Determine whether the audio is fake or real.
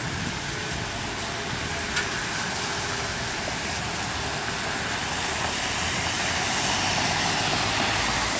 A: real